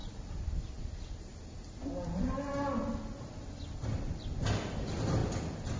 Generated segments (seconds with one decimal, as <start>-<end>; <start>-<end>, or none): none